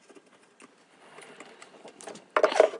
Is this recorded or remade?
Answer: recorded